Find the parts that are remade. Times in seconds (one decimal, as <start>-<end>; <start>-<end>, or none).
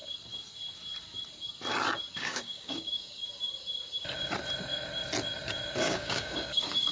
2.1-3.2; 5.8-6.9